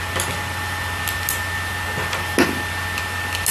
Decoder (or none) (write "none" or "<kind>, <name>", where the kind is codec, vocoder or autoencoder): none